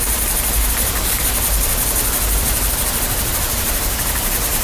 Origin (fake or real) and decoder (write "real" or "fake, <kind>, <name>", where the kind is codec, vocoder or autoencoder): fake, vocoder, BigVGAN v2